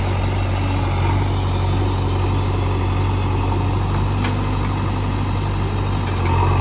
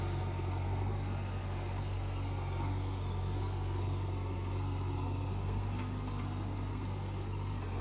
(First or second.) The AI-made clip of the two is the second